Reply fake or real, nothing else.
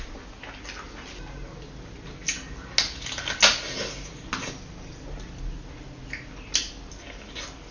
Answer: real